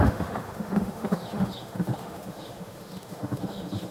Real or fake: fake